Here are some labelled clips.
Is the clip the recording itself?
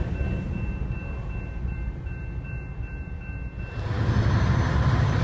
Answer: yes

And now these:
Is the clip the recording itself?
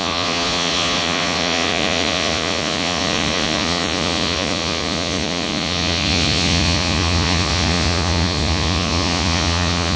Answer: no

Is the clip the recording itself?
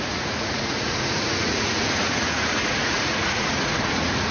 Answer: no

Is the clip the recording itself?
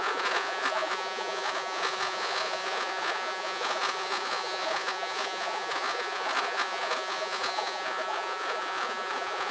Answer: no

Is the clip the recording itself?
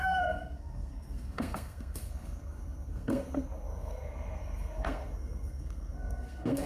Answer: no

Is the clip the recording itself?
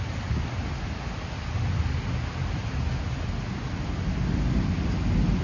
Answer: yes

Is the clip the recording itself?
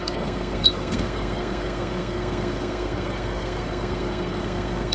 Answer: no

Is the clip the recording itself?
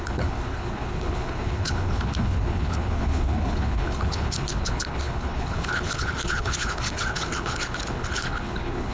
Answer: no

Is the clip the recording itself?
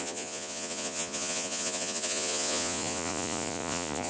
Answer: no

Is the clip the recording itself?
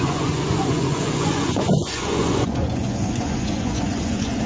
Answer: no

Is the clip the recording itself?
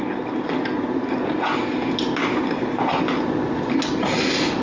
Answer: yes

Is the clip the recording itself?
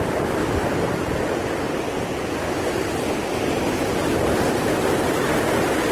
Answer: yes